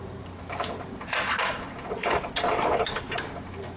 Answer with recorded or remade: remade